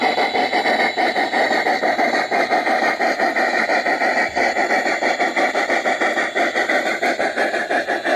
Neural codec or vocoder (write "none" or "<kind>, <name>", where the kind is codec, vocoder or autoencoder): none